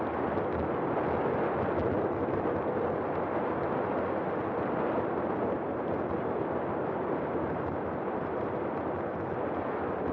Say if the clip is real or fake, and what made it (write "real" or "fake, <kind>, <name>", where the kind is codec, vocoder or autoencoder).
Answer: real